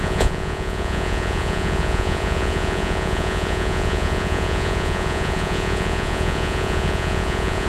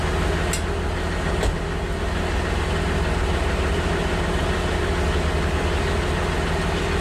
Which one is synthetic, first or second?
first